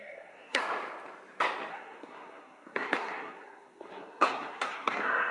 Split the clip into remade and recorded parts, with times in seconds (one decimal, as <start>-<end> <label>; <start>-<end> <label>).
0.0-0.6 remade; 0.6-1.7 recorded; 1.7-5.3 remade

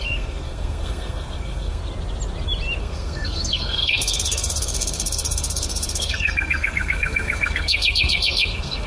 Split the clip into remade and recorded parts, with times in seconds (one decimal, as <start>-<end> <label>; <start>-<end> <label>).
0.0-1.8 remade; 1.8-2.8 recorded; 2.8-8.9 remade

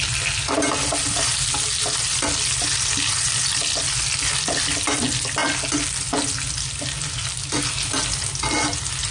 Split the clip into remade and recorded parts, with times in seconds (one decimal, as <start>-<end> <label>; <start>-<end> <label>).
0.0-9.1 recorded

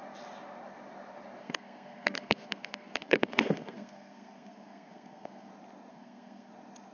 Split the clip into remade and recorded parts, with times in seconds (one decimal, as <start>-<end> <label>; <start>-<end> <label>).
0.0-1.4 recorded; 1.4-5.5 remade; 5.5-5.9 recorded; 5.9-6.5 remade; 6.5-6.9 recorded